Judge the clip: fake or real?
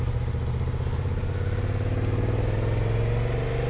real